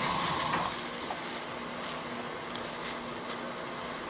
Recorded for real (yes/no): yes